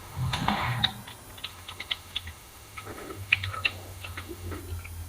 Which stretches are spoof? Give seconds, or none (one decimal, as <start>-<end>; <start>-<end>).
0.0-0.8; 1.5-4.6